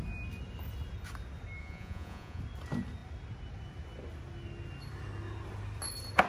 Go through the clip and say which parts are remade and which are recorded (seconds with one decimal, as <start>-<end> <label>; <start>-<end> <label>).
0.0-1.6 recorded; 1.6-2.4 remade; 2.4-6.3 recorded

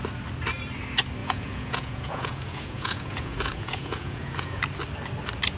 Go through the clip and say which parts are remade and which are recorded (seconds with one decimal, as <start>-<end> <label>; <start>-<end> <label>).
0.0-1.2 recorded; 1.2-4.6 remade; 4.6-5.6 recorded

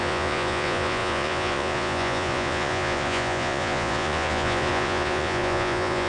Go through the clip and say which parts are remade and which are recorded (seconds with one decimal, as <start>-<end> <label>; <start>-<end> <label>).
0.0-6.1 remade